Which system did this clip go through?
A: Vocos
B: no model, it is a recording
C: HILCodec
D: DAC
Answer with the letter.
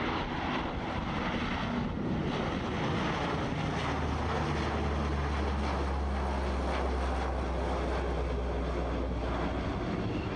B